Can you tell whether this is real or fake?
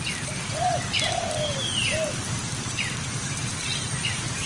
fake